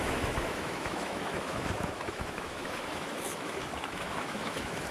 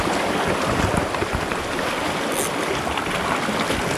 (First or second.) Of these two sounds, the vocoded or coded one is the first